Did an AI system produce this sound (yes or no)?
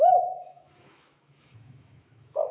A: yes